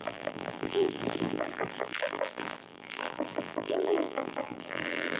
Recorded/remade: remade